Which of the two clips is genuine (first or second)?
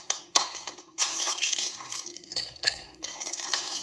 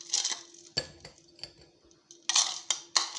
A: second